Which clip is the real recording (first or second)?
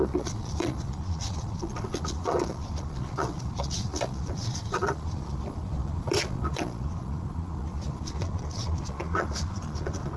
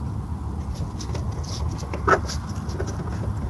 second